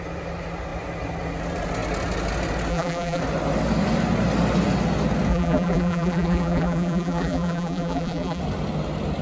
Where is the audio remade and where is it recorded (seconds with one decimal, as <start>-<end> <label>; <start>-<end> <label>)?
0.0-2.7 recorded; 2.7-3.2 remade; 3.2-5.3 recorded; 5.3-8.4 remade; 8.4-9.2 recorded